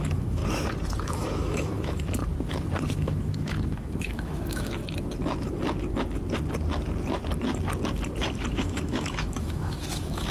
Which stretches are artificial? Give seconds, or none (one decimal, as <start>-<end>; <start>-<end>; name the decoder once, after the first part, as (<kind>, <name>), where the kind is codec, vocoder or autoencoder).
0.0-0.4 (autoencoder, DAC-VAE); 1.0-2.2; 2.9-4.8; 8.5-10.3